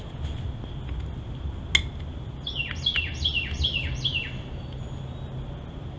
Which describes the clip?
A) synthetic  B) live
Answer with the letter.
B